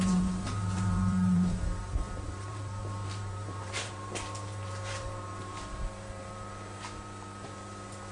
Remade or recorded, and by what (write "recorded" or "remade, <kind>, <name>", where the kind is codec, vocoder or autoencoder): remade, vocoder, BigVGAN v2